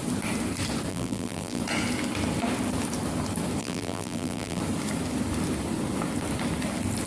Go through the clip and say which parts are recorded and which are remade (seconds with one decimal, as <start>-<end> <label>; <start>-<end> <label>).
0.0-0.9 recorded; 0.9-1.6 remade; 1.6-3.6 recorded; 3.6-4.6 remade; 4.6-7.1 recorded